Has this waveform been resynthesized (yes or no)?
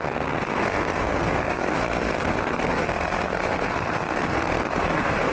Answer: yes